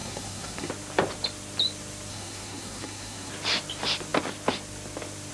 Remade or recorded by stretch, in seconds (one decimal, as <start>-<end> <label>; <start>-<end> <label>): 0.0-0.7 remade; 0.7-2.1 recorded; 2.1-3.3 remade; 3.3-5.3 recorded